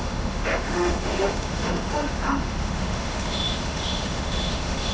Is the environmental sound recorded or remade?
remade